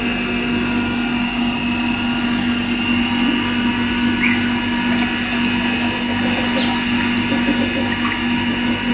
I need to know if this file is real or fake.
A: real